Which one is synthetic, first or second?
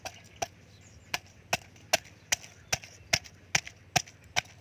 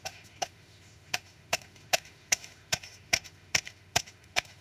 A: second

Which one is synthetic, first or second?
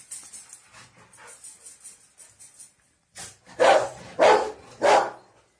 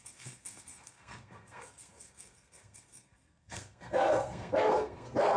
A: second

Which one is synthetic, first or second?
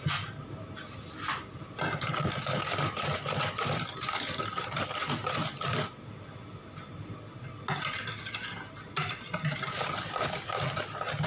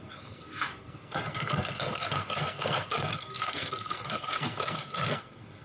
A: second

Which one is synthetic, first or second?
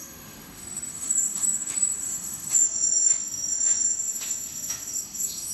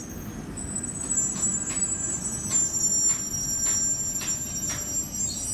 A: first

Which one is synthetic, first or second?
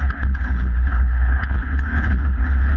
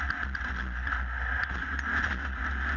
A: first